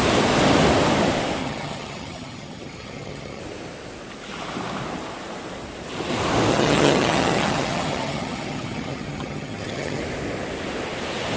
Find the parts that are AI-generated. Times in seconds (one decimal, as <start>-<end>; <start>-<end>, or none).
1.4-3.4; 6.5-10.0